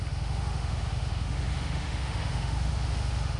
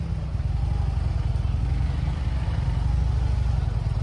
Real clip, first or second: second